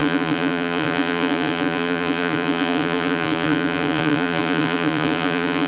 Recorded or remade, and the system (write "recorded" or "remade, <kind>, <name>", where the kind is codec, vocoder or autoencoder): remade, vocoder, Vocos